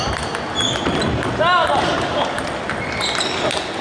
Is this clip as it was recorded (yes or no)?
yes